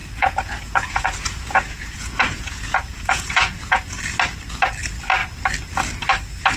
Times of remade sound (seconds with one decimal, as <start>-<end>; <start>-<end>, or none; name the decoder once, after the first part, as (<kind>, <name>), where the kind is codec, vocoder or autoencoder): 0.0-4.0 (vocoder, Vocos)